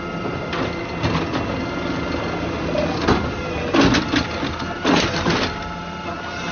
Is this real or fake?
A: real